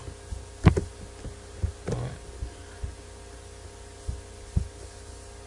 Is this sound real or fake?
real